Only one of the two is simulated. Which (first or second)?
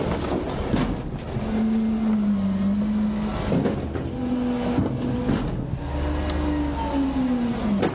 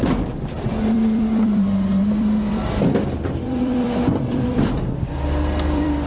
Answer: second